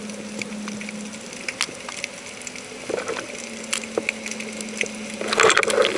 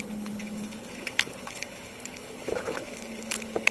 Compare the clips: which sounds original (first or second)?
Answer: first